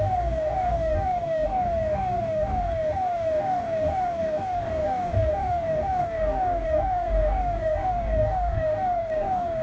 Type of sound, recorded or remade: remade